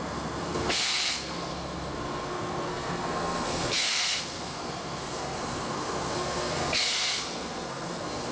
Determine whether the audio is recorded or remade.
remade